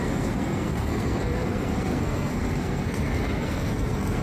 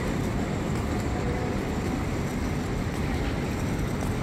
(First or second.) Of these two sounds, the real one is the second